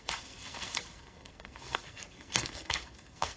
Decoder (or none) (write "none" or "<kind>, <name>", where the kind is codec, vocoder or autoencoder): codec, SNAC